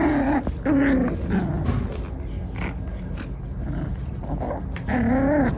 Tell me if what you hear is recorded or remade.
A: recorded